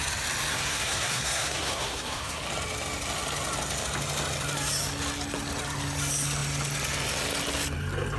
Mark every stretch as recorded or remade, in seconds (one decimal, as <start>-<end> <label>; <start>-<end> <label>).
0.0-0.5 recorded; 0.5-2.4 remade; 2.4-8.2 recorded